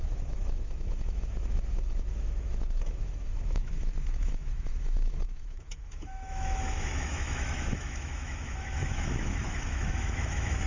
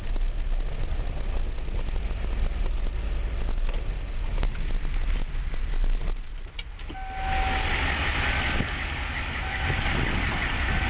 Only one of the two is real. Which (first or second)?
second